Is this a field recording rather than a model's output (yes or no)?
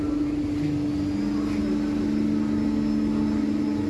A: yes